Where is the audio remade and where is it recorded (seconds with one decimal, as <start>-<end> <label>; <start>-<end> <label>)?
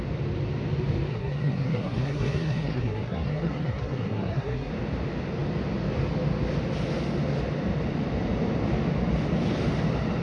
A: 0.0-1.1 recorded; 1.1-4.7 remade; 4.7-10.2 recorded